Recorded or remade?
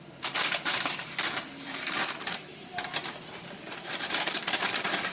remade